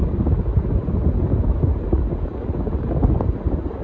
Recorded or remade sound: recorded